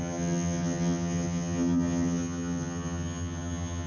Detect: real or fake fake